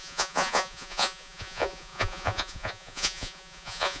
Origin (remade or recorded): remade